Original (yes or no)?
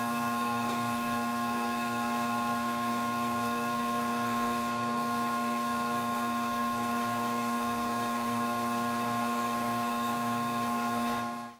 no